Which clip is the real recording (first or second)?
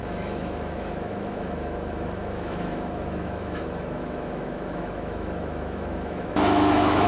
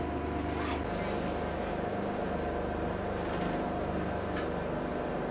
second